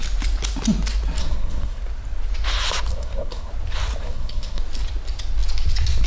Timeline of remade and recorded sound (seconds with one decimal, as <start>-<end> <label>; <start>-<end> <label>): 0.0-1.2 recorded; 1.2-1.8 remade; 1.8-2.9 recorded; 2.9-3.5 remade; 3.5-4.0 recorded; 4.0-4.6 remade; 4.6-6.1 recorded